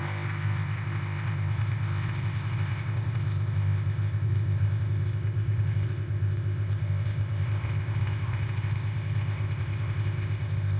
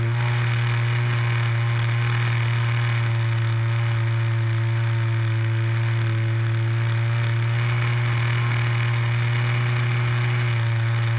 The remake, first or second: first